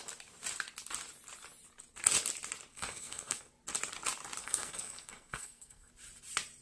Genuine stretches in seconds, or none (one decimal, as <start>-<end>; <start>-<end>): 0.0-2.7; 3.5-4.4; 5.9-6.6